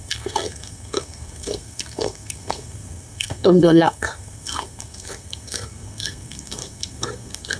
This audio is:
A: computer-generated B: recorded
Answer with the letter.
A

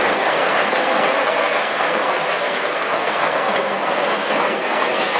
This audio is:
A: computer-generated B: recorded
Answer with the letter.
A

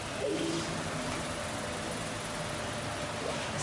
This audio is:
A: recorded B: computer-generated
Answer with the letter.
A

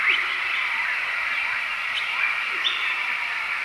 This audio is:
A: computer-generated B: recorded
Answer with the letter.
B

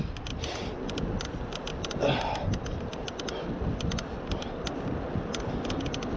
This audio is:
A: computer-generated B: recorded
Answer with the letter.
B